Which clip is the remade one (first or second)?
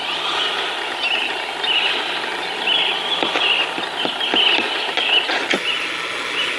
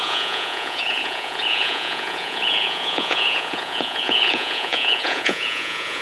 second